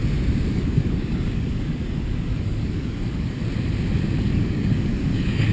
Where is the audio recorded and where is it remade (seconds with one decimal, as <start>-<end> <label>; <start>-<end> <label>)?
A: 0.0-0.5 recorded; 0.5-3.4 remade; 3.4-4.2 recorded; 4.2-5.5 remade